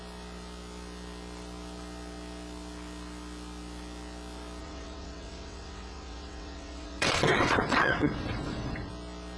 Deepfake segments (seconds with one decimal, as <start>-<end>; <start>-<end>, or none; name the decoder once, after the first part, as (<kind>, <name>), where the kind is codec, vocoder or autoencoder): 4.6-8.9 (vocoder, WaveNeXt)